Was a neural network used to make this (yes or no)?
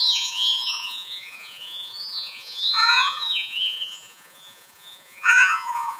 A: yes